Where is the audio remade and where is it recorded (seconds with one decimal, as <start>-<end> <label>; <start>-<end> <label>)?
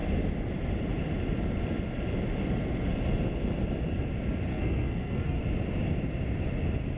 0.0-4.5 recorded; 4.5-5.4 remade; 5.4-7.0 recorded